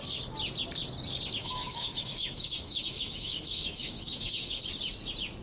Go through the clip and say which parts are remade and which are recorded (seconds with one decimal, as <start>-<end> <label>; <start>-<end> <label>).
0.0-1.4 recorded; 1.4-4.6 remade; 4.6-5.4 recorded